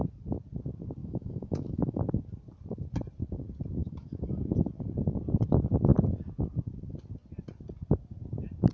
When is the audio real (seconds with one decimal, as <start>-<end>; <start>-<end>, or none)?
0.0-1.0; 2.0-3.8; 4.4-8.7